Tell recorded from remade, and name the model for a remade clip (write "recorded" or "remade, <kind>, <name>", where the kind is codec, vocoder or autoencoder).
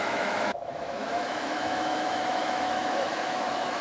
remade, autoencoder, DAC-VAE